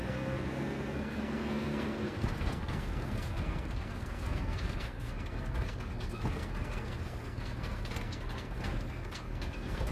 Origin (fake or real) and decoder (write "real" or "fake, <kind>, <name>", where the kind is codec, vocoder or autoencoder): fake, codec, SNAC